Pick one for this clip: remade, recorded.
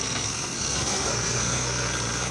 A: remade